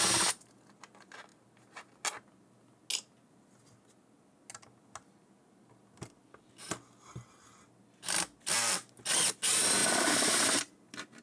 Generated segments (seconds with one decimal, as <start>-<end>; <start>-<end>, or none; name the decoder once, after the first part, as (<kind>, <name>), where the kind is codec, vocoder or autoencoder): none